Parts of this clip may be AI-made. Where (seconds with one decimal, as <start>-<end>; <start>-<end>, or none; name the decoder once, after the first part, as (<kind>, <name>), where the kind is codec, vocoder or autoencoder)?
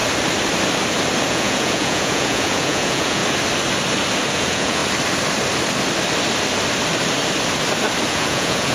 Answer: 1.3-3.2 (vocoder, Vocos); 4.3-4.8; 8.1-8.7